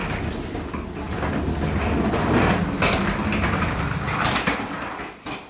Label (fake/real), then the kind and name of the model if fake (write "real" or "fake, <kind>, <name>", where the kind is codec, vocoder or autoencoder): real